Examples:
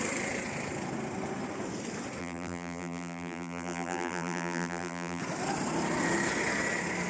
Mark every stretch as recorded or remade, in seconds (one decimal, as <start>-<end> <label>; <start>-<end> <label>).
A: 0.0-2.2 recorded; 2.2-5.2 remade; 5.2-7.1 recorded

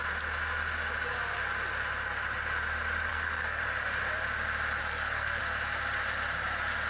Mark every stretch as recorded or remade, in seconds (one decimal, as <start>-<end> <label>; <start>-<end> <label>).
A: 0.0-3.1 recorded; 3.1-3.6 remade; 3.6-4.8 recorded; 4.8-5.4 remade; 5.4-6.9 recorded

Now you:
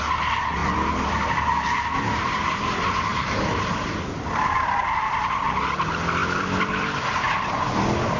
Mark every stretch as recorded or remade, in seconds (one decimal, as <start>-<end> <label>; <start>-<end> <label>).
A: 0.0-0.6 recorded; 0.6-1.1 remade; 1.1-3.1 recorded; 3.1-5.0 remade; 5.0-6.2 recorded; 6.2-7.3 remade; 7.3-8.2 recorded